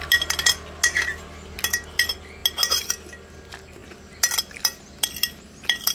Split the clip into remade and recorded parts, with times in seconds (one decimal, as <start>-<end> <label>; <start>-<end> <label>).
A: 0.0-5.9 recorded